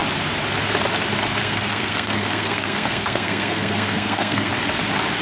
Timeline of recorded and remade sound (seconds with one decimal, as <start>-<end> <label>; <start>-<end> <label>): 0.0-1.4 recorded; 1.4-4.5 remade; 4.5-5.2 recorded